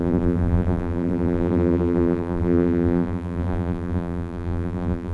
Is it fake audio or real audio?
fake